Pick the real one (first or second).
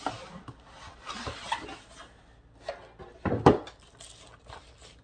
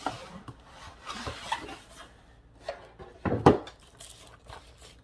first